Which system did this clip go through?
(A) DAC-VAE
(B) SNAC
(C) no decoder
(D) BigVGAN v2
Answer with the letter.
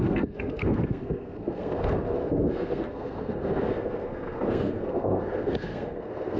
B